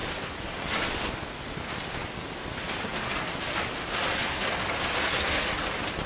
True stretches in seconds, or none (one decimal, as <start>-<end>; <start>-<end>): 1.7-6.1